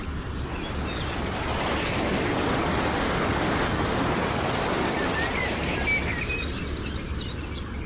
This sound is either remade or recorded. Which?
recorded